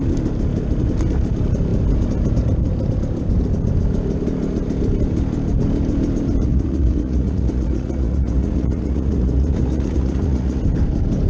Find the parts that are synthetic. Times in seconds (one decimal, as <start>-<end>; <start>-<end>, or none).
6.4-10.6

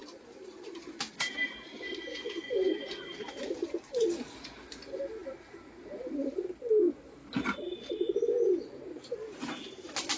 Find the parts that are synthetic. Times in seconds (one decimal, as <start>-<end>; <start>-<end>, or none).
2.1-2.8

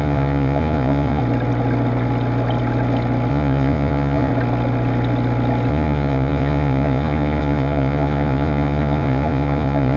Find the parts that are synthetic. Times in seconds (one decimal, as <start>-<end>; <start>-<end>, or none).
0.0-1.2; 3.3-4.3; 5.7-10.0

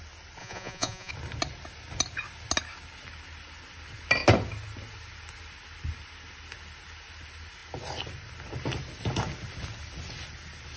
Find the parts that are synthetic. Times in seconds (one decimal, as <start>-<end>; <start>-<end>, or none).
0.4-1.1

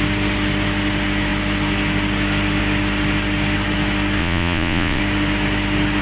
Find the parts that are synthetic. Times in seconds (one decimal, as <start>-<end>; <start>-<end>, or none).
4.2-5.0

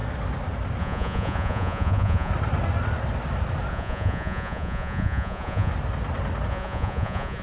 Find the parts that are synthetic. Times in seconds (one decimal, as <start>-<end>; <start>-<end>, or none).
0.8-2.3; 3.7-5.7; 6.5-7.4

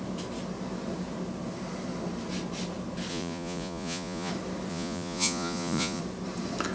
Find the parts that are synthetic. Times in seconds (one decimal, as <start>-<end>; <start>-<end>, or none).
3.1-4.3; 4.7-6.0

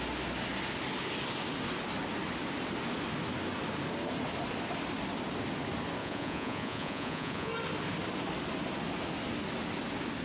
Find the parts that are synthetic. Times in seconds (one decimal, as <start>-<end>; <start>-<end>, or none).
6.0-7.5